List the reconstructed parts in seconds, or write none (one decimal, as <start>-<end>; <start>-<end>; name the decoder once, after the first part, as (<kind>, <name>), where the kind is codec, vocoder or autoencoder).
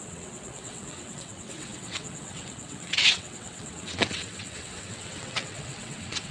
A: 0.0-6.3 (vocoder, WaveNeXt)